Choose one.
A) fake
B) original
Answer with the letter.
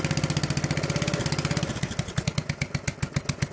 B